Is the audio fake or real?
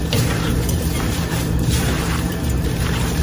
fake